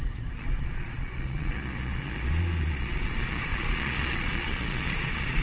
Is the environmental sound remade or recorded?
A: remade